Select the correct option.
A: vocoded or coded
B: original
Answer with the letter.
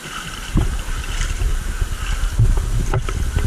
B